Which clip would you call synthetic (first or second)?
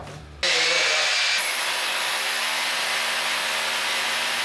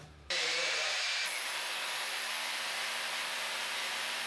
second